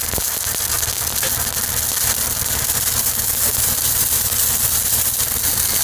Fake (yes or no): no